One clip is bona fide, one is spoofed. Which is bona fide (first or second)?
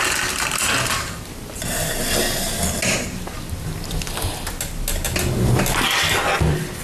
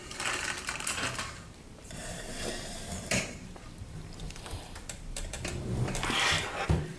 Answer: first